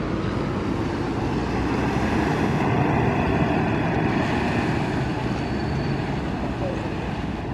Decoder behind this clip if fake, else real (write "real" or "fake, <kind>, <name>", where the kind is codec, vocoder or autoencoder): real